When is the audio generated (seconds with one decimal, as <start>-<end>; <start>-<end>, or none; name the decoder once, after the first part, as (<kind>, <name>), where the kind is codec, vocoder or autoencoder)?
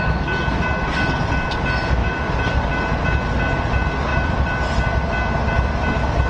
2.0-2.6 (vocoder, BigVGAN v2); 4.1-4.8